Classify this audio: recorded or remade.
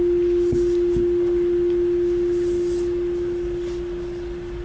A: recorded